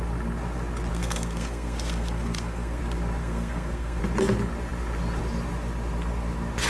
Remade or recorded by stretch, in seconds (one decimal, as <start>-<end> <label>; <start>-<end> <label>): 0.0-0.9 recorded; 0.9-2.8 remade; 2.8-3.2 recorded; 3.2-4.0 remade; 4.0-6.7 recorded